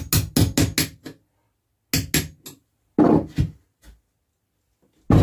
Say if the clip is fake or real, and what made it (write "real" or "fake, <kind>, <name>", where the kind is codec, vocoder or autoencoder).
real